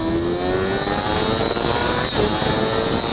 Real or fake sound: real